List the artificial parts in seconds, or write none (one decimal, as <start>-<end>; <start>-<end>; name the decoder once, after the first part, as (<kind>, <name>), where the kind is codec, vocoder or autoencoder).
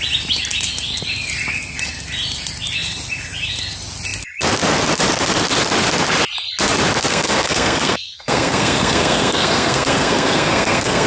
7.1-11.1 (codec, SNAC)